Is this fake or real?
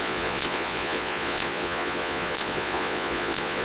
fake